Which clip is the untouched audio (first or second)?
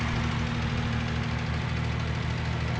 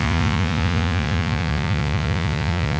first